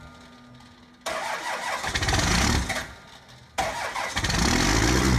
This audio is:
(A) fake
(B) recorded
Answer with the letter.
B